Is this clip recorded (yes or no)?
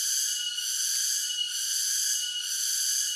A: yes